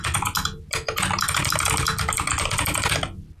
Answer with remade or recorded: recorded